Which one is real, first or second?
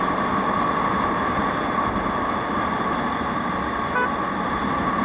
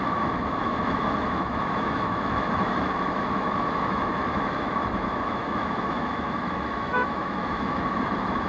first